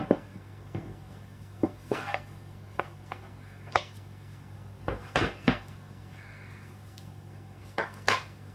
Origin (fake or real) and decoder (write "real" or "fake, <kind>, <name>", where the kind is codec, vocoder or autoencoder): fake, codec, SNAC